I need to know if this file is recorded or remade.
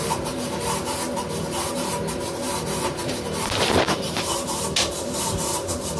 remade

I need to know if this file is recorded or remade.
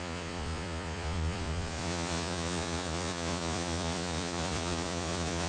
remade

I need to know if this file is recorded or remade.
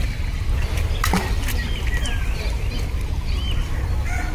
recorded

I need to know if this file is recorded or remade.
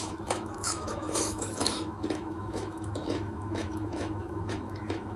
remade